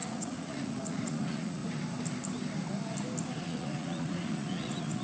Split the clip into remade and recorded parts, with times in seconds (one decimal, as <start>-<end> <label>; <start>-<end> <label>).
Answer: 0.0-1.6 remade; 1.6-3.4 recorded; 3.4-5.0 remade

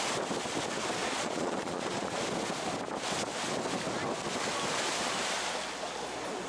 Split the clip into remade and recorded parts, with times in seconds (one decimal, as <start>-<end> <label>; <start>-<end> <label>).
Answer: 0.0-1.0 recorded; 1.0-2.2 remade; 2.2-6.5 recorded

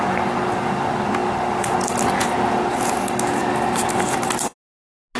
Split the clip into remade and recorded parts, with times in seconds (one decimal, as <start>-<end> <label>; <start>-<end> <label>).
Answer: 0.0-5.2 recorded

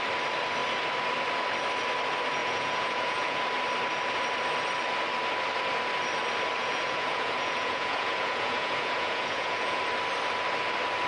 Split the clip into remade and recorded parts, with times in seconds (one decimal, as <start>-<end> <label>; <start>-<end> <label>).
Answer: 0.0-2.4 recorded; 2.4-3.4 remade; 3.4-6.6 recorded; 6.6-9.8 remade; 9.8-11.1 recorded

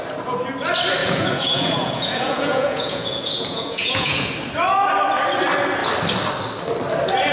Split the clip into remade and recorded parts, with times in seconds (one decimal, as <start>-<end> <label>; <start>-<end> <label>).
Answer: 0.0-1.0 recorded; 1.0-4.3 remade; 4.3-7.3 recorded